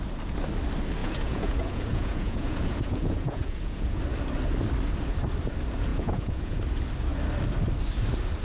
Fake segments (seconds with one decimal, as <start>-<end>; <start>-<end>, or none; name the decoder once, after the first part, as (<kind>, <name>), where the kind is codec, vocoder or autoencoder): 1.0-4.0 (vocoder, Vocos); 5.9-6.6